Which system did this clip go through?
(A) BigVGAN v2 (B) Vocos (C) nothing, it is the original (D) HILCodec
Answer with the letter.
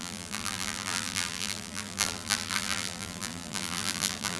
A